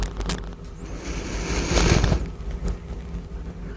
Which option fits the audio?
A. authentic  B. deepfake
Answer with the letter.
A